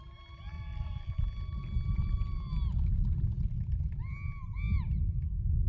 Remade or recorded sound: recorded